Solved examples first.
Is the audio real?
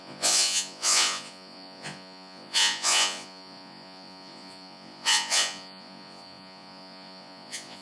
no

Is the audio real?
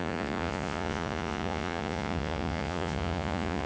no